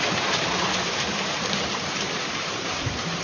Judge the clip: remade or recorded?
remade